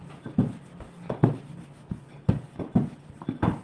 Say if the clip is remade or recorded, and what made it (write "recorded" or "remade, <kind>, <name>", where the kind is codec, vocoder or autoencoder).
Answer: recorded